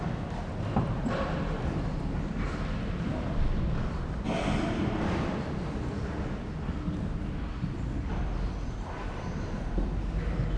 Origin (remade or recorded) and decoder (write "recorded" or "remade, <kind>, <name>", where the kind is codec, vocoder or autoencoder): recorded